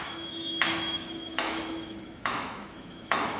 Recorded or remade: remade